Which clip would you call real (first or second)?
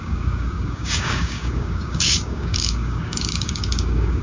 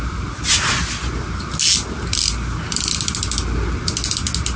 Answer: second